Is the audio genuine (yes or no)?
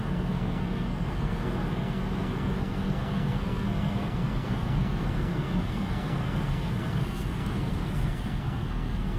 no